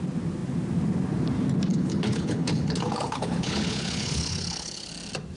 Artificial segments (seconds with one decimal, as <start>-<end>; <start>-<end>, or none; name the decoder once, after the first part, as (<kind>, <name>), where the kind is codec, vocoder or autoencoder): 1.7-4.9 (codec, HILCodec)